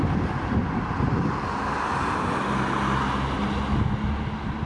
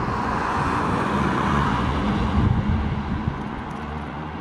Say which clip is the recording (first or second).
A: first